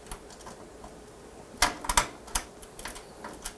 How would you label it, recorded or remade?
recorded